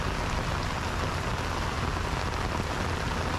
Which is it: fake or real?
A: real